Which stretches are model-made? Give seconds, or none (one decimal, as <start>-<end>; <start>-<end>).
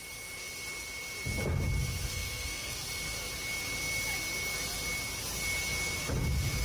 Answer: 2.1-2.7